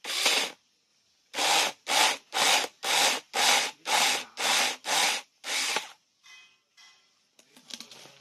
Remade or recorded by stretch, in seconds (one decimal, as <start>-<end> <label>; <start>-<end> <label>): 0.0-8.2 recorded

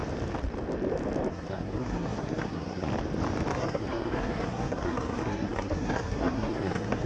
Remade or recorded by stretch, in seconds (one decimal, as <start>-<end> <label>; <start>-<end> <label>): 0.0-1.3 recorded; 1.3-2.9 remade; 2.9-3.5 recorded; 3.5-7.1 remade

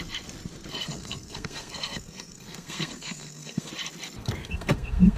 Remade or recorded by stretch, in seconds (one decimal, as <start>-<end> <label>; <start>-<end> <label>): 0.0-0.7 recorded; 0.7-3.7 remade; 3.7-4.2 recorded; 4.2-5.2 remade

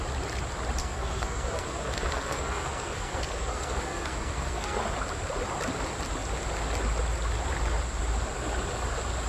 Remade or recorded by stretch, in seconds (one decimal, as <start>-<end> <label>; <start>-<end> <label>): 0.0-0.8 recorded; 0.8-4.8 remade; 4.8-9.3 recorded

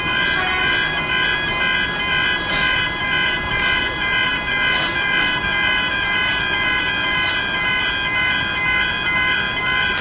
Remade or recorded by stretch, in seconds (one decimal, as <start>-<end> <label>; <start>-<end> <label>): 0.0-10.0 recorded

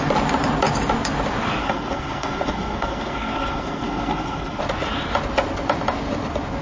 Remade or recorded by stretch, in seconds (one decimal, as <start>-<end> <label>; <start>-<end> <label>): 0.0-1.6 recorded; 1.6-4.6 remade; 4.6-6.6 recorded